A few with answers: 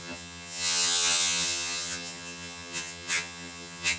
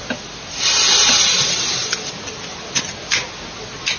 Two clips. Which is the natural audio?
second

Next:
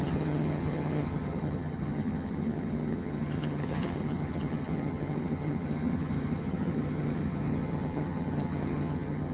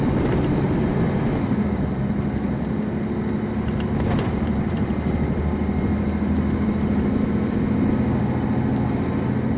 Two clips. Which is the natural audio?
second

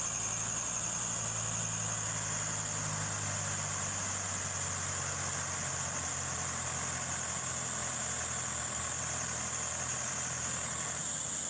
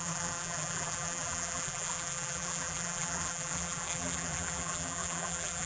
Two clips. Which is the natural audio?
first